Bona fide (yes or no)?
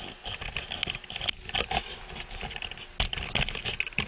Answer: yes